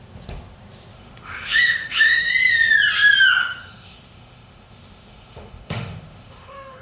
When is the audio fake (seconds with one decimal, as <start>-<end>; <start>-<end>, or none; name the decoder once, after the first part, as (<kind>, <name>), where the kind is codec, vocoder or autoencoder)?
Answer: 0.9-2.3 (autoencoder, DAC-VAE); 3.4-6.8